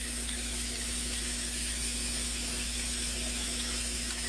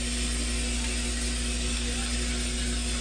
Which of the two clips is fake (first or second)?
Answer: first